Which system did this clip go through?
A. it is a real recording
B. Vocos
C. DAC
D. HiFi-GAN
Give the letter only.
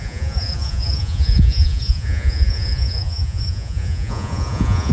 B